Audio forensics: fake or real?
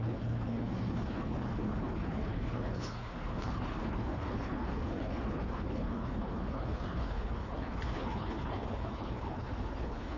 fake